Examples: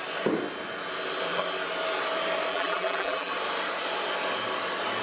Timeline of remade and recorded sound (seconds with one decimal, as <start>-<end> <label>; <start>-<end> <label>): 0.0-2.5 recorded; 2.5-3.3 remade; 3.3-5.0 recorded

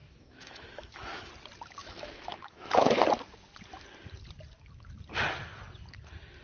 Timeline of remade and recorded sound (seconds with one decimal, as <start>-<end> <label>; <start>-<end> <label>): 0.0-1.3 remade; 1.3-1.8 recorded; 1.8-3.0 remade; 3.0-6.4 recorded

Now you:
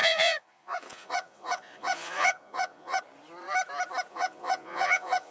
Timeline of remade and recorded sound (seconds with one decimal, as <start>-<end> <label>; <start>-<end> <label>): 0.0-3.0 remade; 3.0-4.1 recorded; 4.1-5.3 remade